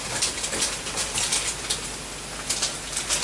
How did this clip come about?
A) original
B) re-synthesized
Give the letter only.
A